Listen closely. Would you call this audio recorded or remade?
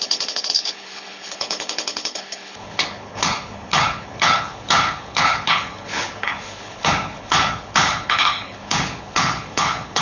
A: remade